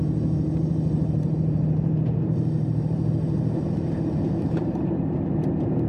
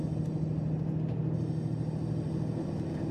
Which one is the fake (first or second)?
first